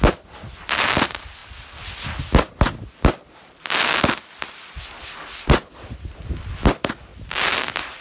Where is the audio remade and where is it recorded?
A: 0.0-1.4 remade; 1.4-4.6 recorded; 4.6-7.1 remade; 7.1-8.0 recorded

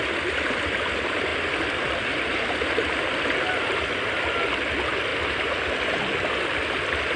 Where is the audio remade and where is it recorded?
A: 0.0-7.2 recorded